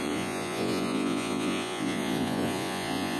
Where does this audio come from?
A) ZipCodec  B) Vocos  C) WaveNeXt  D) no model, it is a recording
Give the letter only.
B